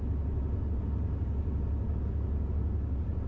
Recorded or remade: recorded